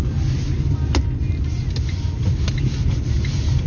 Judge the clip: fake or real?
real